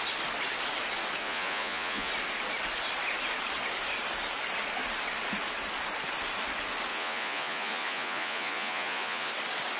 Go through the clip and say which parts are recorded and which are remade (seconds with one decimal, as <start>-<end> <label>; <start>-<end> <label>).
0.0-1.2 recorded; 1.2-2.1 remade; 2.1-6.9 recorded; 6.9-9.3 remade; 9.3-9.8 recorded